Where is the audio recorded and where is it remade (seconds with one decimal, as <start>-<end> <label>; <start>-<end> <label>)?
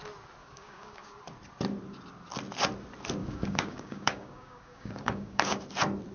0.0-0.4 recorded; 0.4-1.2 remade; 1.2-3.2 recorded; 3.2-5.6 remade; 5.6-6.1 recorded